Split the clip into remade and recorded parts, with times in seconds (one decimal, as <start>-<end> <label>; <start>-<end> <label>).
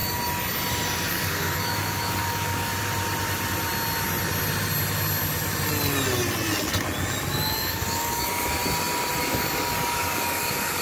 0.0-1.1 recorded; 1.1-2.7 remade; 2.7-7.3 recorded; 7.3-8.6 remade; 8.6-9.2 recorded; 9.2-10.8 remade